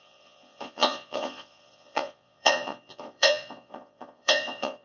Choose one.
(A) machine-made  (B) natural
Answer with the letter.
A